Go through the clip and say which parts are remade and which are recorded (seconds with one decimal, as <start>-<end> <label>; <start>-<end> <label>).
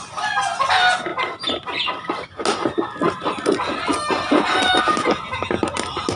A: 0.0-6.2 recorded